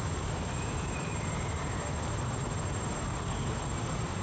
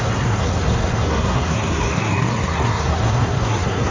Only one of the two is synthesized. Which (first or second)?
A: second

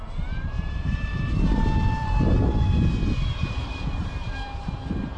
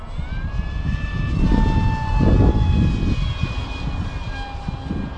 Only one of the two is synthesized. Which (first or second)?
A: first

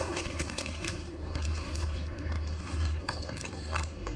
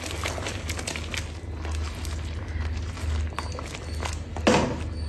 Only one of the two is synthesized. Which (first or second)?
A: first